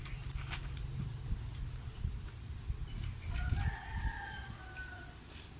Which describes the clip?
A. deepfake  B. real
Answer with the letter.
B